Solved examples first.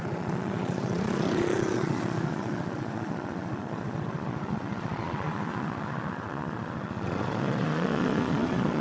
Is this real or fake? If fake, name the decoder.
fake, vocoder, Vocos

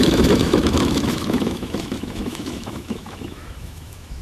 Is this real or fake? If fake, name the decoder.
fake, autoencoder, DAC-VAE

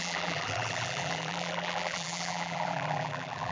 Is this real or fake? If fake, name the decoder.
fake, vocoder, BigVGAN v2